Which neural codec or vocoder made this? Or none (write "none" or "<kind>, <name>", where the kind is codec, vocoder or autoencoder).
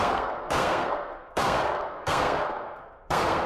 codec, SNAC